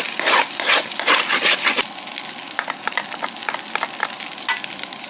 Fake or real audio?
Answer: real